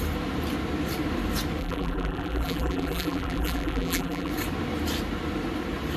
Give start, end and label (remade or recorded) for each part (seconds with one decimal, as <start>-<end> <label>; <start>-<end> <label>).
0.0-1.6 recorded; 1.6-4.3 remade; 4.3-6.0 recorded